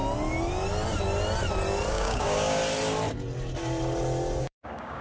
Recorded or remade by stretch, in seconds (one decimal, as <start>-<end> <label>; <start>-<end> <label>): 0.0-1.9 recorded; 1.9-2.6 remade; 2.6-4.4 recorded; 4.4-5.0 remade